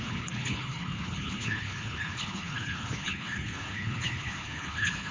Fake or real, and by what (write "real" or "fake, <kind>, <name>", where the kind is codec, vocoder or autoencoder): fake, codec, HILCodec